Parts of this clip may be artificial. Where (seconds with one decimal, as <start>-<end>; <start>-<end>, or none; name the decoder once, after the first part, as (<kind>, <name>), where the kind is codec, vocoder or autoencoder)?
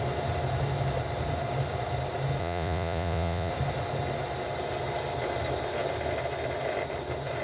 2.4-3.5 (vocoder, Vocos)